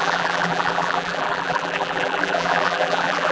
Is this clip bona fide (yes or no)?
no